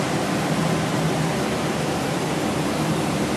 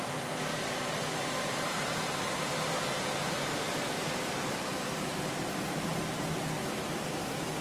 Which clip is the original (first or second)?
second